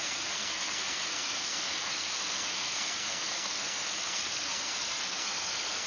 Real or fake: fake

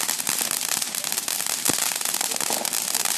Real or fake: real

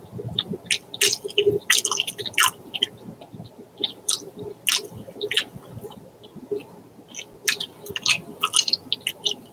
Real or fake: real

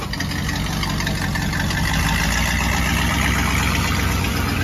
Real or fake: real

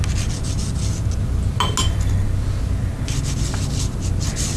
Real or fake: real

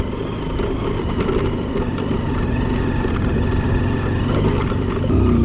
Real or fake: real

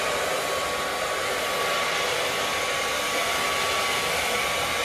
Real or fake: real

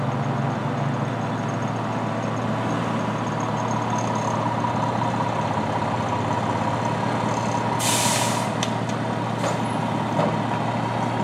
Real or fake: real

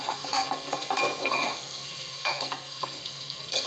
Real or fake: fake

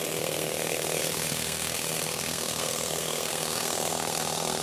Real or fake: fake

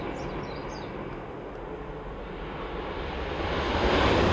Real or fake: real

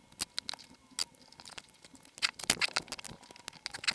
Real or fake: real